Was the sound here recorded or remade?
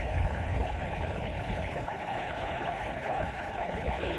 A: remade